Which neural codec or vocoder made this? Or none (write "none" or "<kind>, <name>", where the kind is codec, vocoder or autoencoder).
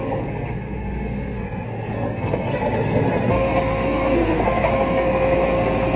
codec, SNAC